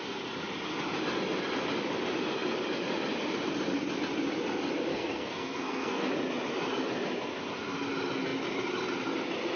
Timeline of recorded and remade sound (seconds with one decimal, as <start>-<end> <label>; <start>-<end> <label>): 0.0-4.9 recorded; 4.9-6.1 remade; 6.1-9.6 recorded

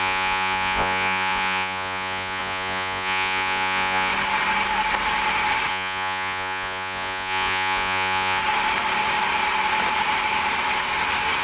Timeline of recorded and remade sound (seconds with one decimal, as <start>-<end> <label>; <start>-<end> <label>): 0.0-4.1 remade; 4.1-5.7 recorded; 5.7-8.4 remade; 8.4-11.4 recorded

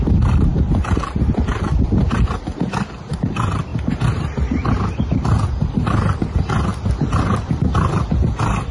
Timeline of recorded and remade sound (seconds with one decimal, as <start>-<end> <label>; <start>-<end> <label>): 0.0-8.7 recorded